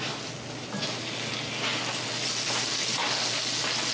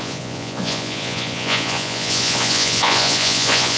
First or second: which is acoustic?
first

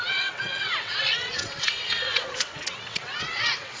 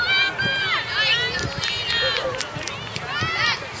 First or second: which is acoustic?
second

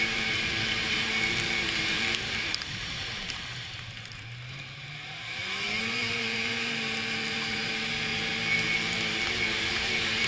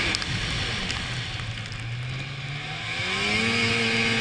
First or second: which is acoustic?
second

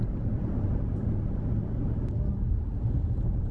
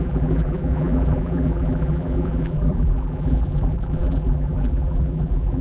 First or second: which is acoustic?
first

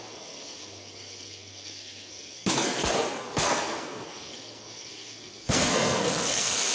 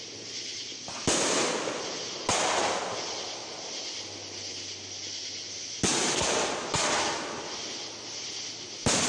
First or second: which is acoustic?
second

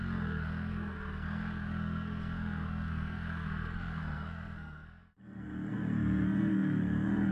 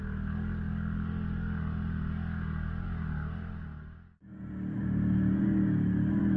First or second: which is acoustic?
second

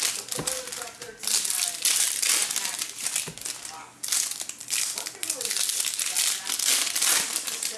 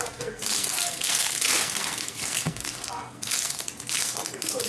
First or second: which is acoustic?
first